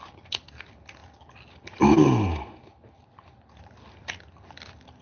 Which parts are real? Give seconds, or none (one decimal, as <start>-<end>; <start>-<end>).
0.0-5.0